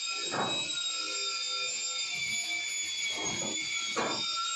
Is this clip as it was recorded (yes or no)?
yes